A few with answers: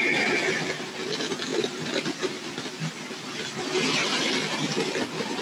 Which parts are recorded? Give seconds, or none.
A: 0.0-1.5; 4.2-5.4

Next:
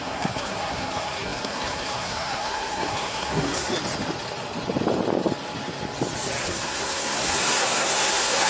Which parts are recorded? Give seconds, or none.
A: 3.7-6.4